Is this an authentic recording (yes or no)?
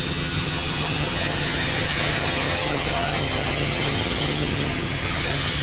no